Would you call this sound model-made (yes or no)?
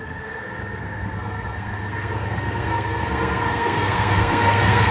yes